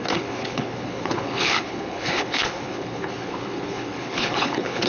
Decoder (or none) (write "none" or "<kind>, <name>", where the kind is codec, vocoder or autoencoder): codec, HILCodec